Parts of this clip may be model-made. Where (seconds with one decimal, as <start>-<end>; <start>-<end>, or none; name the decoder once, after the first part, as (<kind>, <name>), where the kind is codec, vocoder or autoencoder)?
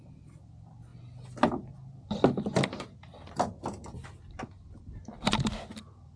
none